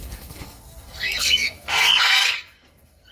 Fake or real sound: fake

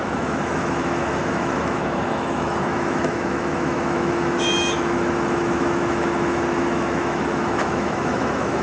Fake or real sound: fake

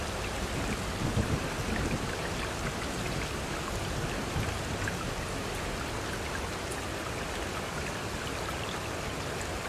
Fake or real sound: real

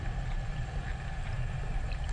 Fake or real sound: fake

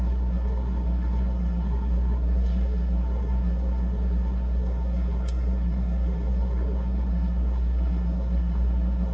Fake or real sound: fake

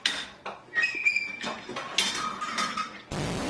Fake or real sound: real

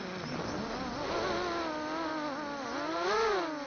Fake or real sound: real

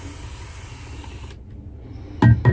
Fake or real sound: real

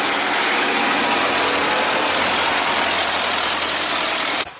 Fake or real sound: real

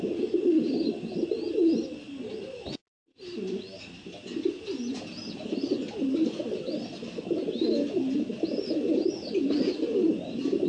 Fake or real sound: real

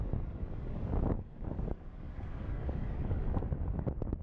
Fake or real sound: fake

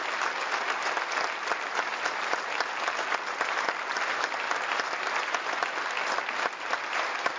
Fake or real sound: real